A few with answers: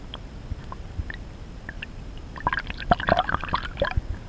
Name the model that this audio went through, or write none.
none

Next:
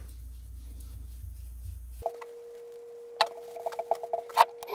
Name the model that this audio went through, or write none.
none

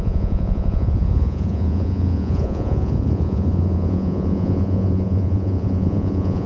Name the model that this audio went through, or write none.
vocoder, Vocos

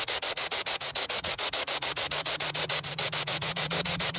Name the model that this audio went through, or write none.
vocoder, Vocos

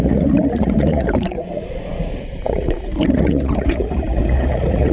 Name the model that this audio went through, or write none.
vocoder, Vocos